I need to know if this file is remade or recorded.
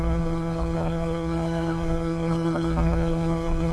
remade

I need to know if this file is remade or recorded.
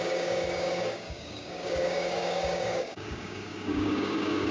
remade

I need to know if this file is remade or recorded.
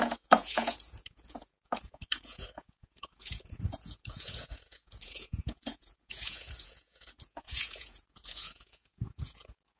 remade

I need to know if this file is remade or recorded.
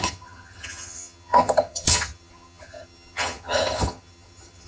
remade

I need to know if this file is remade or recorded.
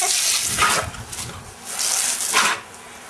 recorded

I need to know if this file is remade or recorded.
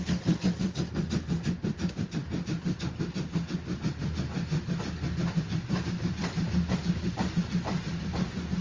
recorded